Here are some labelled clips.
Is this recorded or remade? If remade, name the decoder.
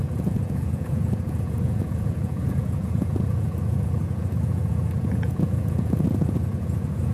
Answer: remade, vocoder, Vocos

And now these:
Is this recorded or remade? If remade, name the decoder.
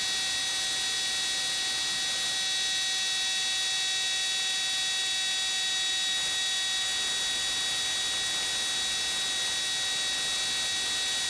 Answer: recorded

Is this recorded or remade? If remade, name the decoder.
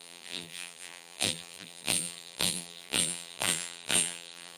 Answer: remade, vocoder, BigVGAN v2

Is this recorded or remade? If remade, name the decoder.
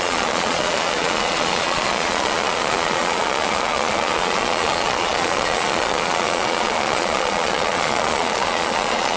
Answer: remade, vocoder, Vocos